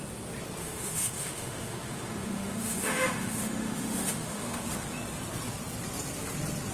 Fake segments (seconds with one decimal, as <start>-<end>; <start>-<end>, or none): 0.6-4.6